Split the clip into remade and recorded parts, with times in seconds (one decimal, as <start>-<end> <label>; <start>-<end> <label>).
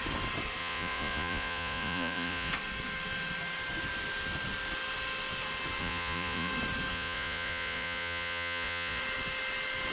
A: 0.0-0.6 recorded; 0.6-2.5 remade; 2.5-5.8 recorded; 5.8-6.5 remade; 6.5-6.9 recorded; 6.9-9.0 remade; 9.0-9.9 recorded